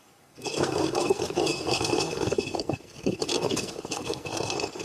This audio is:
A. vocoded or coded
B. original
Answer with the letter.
A